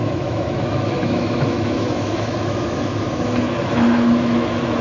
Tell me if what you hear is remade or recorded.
remade